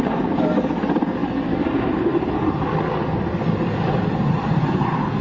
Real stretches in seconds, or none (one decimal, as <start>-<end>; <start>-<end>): 0.0-5.2